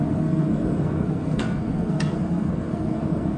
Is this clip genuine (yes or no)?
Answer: no